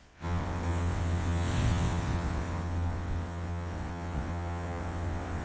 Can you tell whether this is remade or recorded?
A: remade